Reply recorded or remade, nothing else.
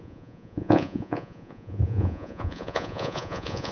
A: remade